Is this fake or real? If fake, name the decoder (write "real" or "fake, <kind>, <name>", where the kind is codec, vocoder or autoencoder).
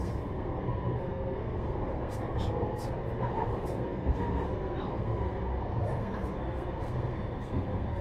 fake, codec, SNAC